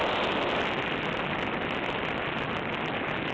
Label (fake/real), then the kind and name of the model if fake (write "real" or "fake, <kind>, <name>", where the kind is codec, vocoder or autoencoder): real